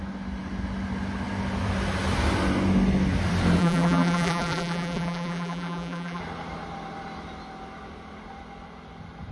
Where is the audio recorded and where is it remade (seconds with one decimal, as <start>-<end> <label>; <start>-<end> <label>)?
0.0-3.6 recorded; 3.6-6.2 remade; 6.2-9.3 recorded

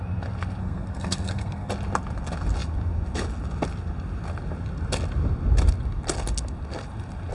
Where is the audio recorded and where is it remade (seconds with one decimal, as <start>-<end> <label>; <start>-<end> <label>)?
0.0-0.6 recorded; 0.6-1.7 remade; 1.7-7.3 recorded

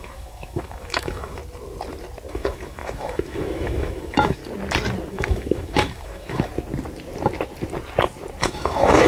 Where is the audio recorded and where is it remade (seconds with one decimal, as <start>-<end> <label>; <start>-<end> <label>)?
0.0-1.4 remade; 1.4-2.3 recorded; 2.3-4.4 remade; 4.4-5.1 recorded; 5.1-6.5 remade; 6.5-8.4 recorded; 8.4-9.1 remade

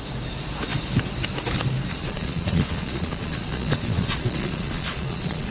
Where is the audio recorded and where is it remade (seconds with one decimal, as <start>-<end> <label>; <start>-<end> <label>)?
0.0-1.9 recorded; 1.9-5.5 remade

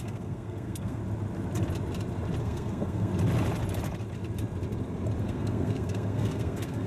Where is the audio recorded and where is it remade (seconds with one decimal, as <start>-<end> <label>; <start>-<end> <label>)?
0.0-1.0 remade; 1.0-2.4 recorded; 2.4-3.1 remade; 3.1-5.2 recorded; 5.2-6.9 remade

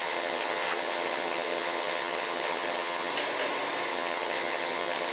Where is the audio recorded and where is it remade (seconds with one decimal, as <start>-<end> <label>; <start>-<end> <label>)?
0.0-3.1 remade; 3.1-3.9 recorded; 3.9-5.1 remade